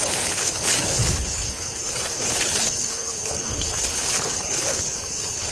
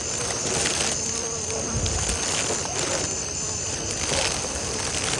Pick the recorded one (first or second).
second